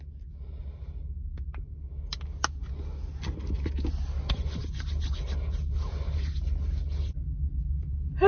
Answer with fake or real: real